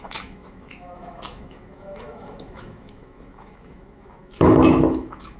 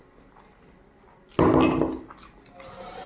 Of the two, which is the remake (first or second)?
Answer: first